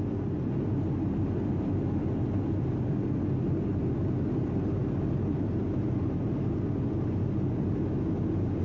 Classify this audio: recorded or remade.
recorded